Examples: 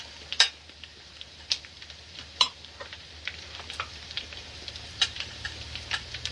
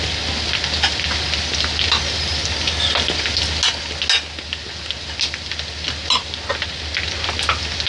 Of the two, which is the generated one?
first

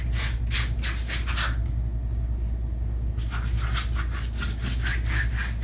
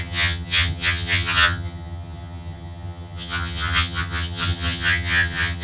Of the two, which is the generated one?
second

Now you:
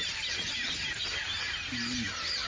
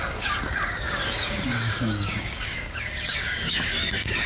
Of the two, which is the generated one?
second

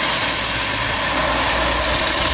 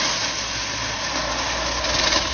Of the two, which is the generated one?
first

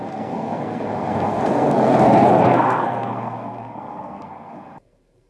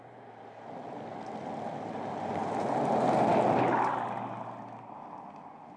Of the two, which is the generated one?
first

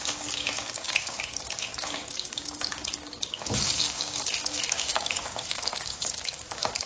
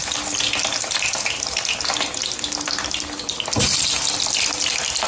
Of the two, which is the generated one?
first